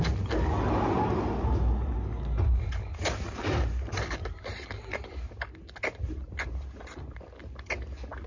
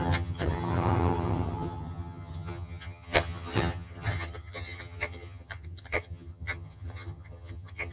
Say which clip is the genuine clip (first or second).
first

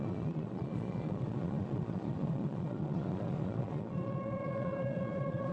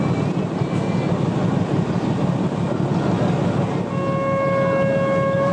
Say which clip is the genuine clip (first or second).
second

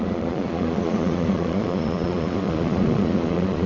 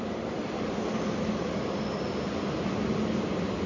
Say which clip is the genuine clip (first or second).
second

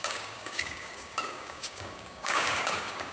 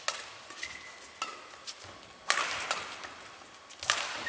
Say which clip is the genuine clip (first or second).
second